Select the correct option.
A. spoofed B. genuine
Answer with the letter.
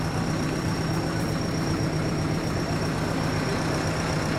A